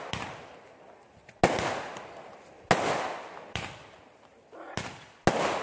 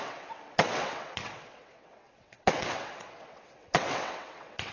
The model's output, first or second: second